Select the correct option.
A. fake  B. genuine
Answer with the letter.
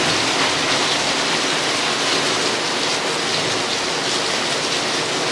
B